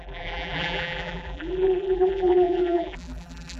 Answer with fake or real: fake